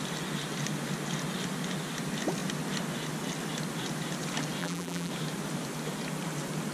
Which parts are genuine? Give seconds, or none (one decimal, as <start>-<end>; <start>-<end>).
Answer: 0.0-4.6; 5.1-6.7